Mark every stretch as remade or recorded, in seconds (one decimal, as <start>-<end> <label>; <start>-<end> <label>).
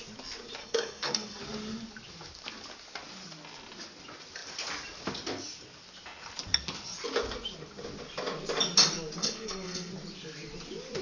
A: 0.0-0.6 recorded; 0.6-1.4 remade; 1.4-9.2 recorded; 9.2-9.9 remade; 9.9-11.0 recorded